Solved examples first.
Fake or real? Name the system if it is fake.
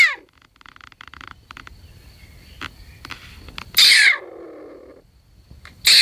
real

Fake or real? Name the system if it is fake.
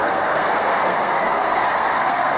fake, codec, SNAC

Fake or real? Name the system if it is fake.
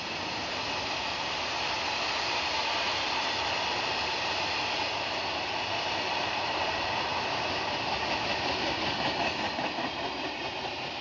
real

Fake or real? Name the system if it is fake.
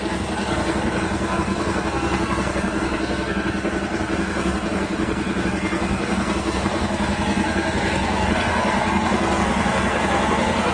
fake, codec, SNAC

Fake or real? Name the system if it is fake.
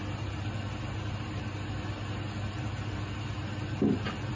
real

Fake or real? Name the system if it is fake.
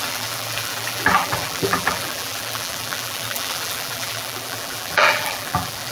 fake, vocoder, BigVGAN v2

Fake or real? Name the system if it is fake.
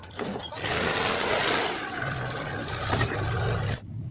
real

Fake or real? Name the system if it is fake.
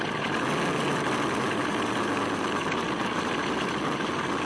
real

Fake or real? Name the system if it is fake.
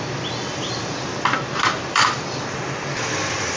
fake, vocoder, BigVGAN v2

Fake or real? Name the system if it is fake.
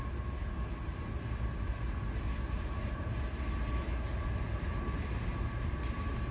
real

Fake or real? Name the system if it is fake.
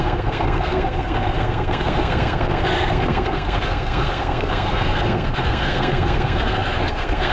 fake, codec, SNAC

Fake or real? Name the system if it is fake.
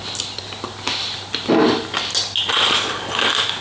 real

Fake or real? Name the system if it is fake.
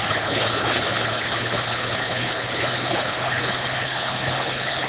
fake, codec, HILCodec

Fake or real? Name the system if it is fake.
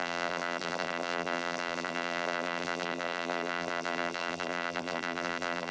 fake, vocoder, BigVGAN v2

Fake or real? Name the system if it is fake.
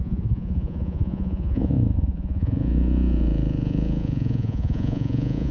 fake, vocoder, Vocos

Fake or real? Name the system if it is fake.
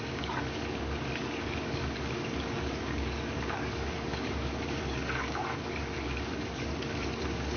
fake, codec, DAC